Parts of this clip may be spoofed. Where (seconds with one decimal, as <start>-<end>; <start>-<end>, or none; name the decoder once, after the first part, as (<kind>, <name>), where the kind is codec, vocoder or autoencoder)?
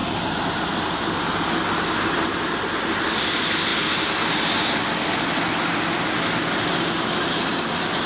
none